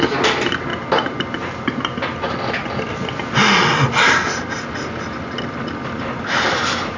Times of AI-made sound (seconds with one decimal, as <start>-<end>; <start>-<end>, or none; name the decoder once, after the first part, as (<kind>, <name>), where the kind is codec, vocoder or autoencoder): none